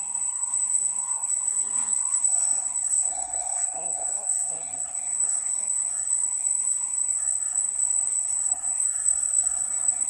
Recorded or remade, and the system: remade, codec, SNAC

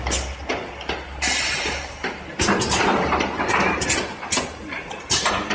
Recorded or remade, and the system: recorded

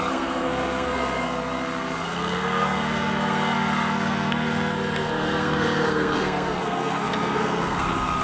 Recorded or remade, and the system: remade, codec, SNAC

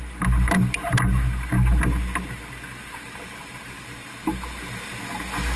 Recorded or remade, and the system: recorded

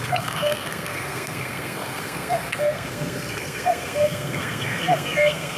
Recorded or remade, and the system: remade, codec, SNAC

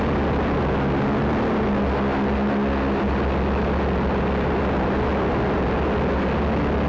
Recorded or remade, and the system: recorded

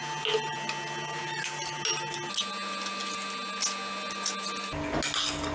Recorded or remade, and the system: recorded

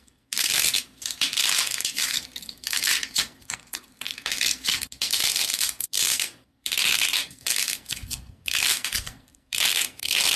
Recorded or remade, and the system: remade, codec, SNAC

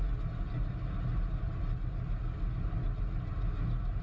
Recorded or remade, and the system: recorded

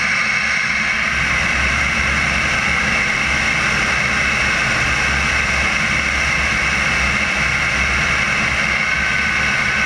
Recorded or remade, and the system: recorded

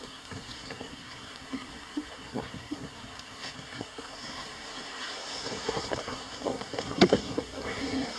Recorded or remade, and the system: remade, codec, SNAC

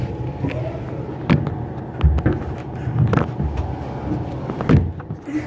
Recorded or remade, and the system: recorded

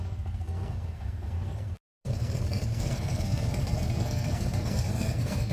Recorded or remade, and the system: remade, codec, SNAC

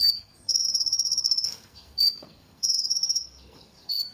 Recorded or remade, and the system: remade, codec, SNAC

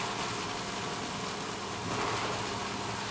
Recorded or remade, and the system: recorded